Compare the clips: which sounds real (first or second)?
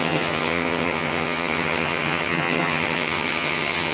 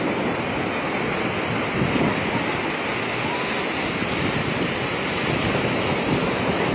second